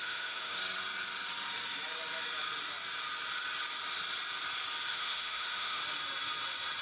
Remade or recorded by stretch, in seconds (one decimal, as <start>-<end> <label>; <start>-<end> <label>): 0.0-0.6 remade; 0.6-4.9 recorded; 4.9-5.8 remade; 5.8-6.8 recorded